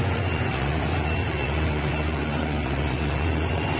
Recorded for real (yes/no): no